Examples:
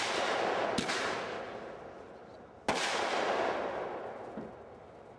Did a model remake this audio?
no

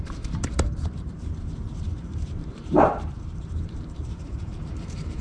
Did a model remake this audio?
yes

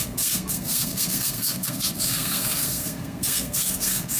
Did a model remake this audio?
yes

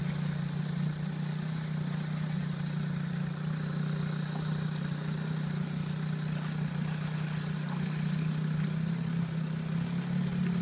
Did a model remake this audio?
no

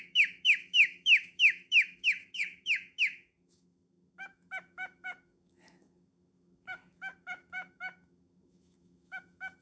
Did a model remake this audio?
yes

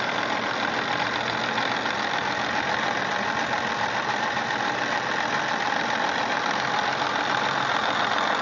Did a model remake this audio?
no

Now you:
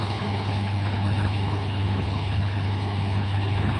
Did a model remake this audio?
yes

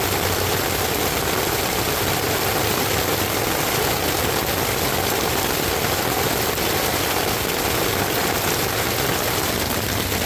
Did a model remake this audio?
no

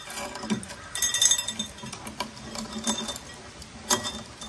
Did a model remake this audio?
no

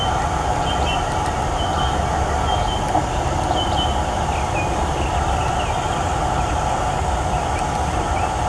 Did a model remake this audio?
no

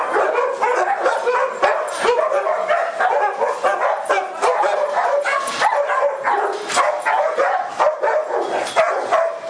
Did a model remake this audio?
no